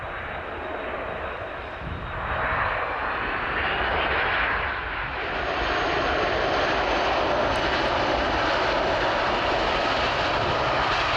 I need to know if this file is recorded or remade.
recorded